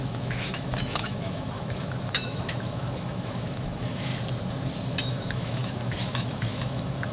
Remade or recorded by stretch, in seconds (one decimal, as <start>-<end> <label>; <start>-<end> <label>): 0.0-4.1 remade; 4.1-5.0 recorded; 5.0-7.1 remade